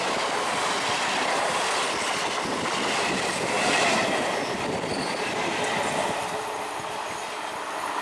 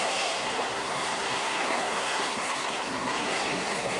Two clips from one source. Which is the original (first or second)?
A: first